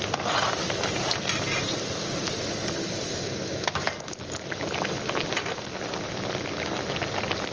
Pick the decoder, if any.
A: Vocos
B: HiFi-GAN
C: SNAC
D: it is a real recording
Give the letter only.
D